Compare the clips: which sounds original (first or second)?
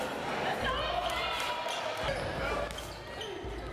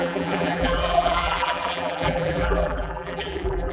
first